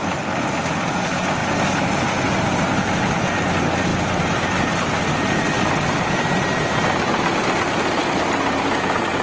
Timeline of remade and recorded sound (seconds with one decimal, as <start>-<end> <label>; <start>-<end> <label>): 0.0-9.2 recorded